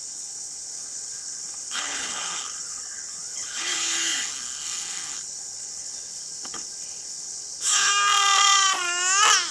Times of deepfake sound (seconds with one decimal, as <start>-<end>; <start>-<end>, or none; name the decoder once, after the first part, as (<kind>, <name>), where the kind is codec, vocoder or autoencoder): 0.0-7.9 (codec, HILCodec)